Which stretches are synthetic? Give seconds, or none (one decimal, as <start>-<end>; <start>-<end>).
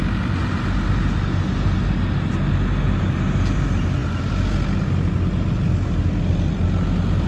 none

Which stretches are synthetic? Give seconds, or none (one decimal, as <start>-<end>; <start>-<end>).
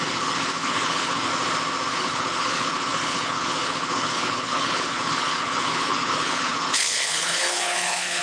0.0-1.3; 1.9-8.2